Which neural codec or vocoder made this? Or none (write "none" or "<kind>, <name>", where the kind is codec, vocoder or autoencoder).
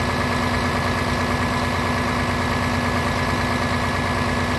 none